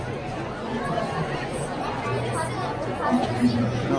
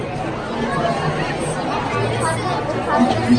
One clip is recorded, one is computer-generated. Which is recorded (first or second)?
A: second